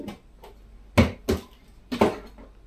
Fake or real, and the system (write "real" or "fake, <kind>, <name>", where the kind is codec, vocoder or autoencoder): real